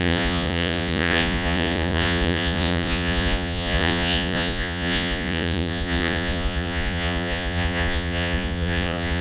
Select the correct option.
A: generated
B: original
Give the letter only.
A